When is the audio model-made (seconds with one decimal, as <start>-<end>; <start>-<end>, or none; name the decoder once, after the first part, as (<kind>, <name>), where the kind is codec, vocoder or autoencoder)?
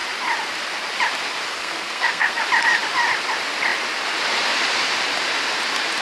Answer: 1.5-2.4 (codec, SNAC)